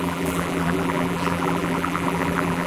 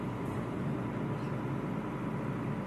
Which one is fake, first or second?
first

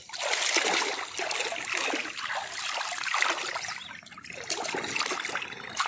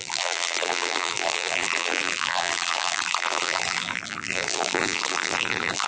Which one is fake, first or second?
second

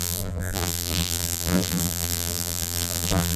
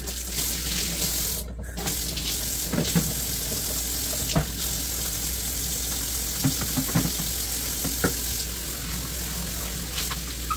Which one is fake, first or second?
first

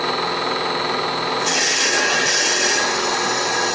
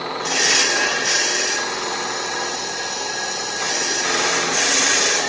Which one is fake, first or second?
second